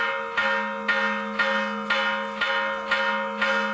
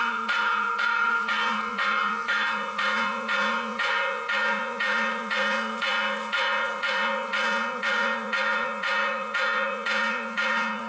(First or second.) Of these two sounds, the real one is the first